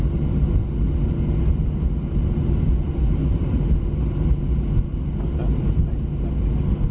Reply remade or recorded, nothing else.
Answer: recorded